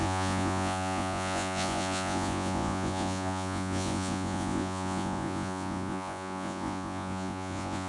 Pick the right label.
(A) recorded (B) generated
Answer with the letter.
B